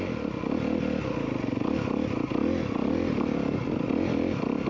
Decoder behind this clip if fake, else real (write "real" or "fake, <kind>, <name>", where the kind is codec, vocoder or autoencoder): real